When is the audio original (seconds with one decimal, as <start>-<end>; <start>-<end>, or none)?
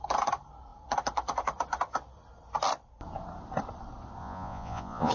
0.0-4.2